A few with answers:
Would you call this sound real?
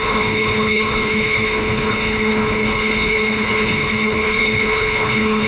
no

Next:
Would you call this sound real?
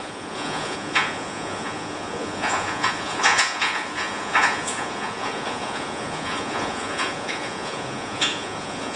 no